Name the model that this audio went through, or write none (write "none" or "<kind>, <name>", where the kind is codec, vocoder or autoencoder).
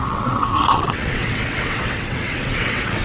vocoder, WaveNeXt